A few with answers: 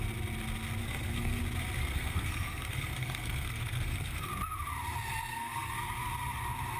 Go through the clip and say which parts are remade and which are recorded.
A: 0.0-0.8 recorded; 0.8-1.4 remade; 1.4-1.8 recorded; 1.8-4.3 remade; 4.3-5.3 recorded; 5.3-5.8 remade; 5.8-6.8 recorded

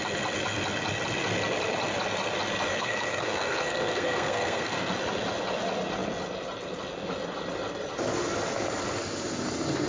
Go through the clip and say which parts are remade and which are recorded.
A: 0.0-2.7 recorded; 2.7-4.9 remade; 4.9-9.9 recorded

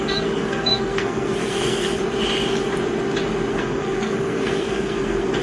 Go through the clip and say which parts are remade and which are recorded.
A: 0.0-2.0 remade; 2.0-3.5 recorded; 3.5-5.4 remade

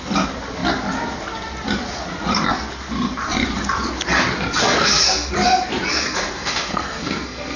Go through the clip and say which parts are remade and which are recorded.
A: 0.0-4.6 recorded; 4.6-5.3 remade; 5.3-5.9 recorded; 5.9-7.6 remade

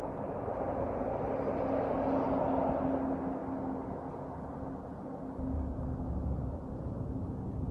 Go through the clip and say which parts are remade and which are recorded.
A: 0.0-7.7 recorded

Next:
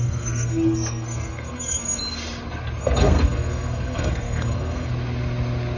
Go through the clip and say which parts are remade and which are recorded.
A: 0.0-2.0 remade; 2.0-2.8 recorded; 2.8-4.9 remade; 4.9-5.8 recorded

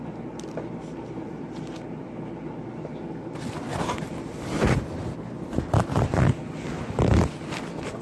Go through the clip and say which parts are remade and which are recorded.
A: 0.0-8.0 recorded

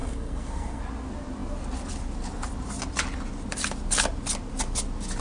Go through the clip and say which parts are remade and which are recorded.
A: 0.0-0.8 remade; 0.8-5.2 recorded